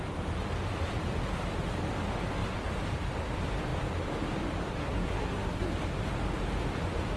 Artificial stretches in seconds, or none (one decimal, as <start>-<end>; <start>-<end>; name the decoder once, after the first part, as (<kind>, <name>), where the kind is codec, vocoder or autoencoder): 4.7-5.7 (codec, SNAC)